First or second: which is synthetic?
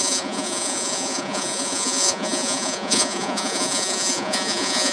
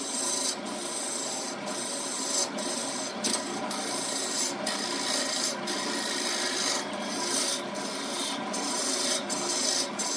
first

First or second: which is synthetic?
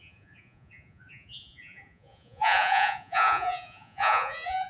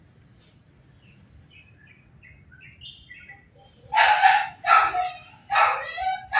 first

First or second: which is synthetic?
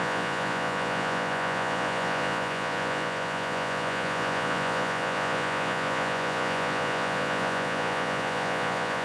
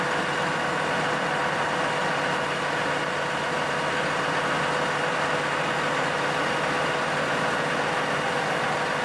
first